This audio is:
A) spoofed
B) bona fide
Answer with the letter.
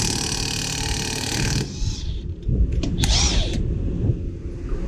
B